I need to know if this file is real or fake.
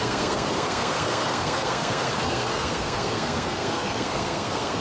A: fake